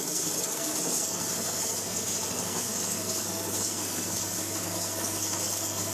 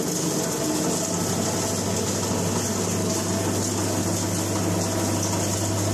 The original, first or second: second